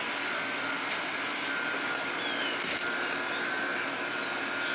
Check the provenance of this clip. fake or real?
real